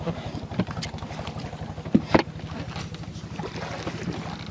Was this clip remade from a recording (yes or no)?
no